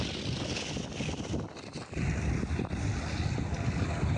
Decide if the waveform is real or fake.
real